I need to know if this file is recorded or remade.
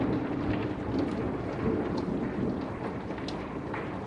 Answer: recorded